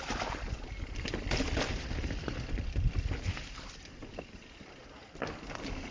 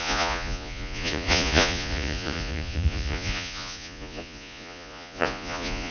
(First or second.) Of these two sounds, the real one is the first